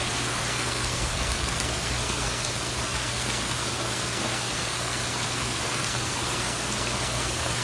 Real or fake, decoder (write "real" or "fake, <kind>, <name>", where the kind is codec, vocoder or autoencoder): fake, codec, SNAC